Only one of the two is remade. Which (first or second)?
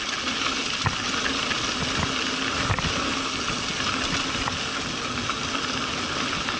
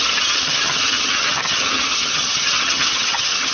second